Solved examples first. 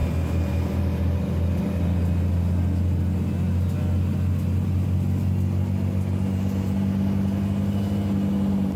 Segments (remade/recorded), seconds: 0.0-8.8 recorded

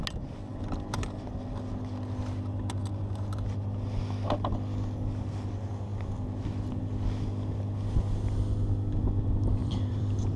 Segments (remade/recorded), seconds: 0.0-9.6 recorded; 9.6-10.4 remade

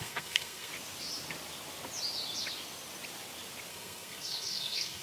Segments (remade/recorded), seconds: 0.0-0.7 remade; 0.7-3.7 recorded; 3.7-5.0 remade